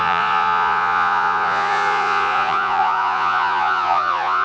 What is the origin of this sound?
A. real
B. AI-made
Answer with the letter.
B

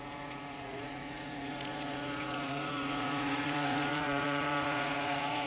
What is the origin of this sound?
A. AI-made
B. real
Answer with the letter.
A